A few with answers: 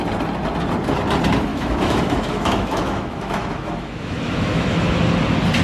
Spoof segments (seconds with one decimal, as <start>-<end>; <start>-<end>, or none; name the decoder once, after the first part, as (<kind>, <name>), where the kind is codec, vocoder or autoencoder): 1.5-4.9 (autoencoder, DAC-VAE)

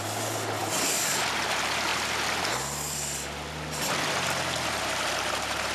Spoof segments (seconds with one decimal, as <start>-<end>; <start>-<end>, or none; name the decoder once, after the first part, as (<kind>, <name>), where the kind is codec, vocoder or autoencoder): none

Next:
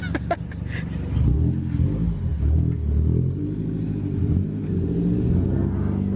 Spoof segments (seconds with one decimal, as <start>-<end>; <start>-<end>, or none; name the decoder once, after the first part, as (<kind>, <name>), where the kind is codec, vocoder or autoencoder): none

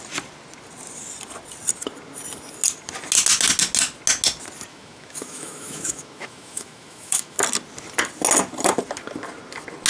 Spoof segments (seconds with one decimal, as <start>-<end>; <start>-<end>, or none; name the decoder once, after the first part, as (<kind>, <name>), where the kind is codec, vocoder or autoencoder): 4.7-7.4 (autoencoder, DAC-VAE)

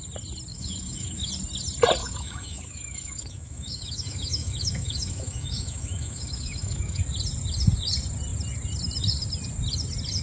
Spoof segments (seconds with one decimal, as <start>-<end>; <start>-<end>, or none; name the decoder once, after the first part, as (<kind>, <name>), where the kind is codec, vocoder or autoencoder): 0.5-1.3 (autoencoder, DAC-VAE); 2.0-7.0

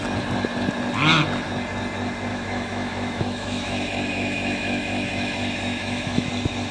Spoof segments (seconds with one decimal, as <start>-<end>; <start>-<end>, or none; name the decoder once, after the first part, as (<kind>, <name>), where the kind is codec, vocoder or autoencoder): 2.3-6.3 (autoencoder, DAC-VAE)